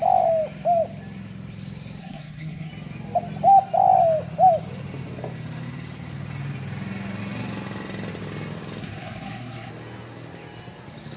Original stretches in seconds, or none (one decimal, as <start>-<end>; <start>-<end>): 0.0-2.0; 2.7-8.8; 9.7-11.2